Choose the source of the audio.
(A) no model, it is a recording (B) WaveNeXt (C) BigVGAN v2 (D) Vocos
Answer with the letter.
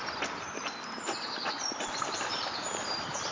A